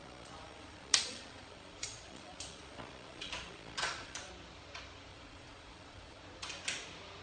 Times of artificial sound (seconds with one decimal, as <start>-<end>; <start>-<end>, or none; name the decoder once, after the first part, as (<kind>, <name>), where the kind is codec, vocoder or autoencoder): 0.0-4.3 (vocoder, Vocos); 5.1-6.2